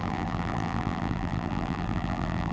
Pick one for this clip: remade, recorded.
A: remade